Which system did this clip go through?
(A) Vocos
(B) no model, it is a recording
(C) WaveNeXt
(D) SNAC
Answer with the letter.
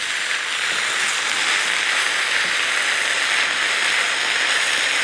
B